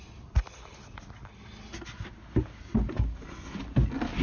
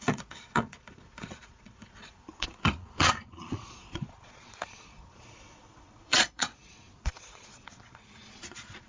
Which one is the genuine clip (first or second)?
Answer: first